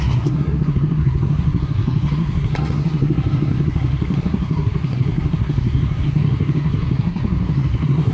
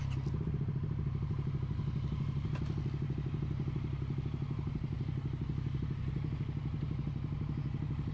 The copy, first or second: first